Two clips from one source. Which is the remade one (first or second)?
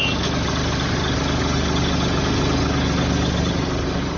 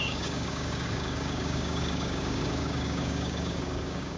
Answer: second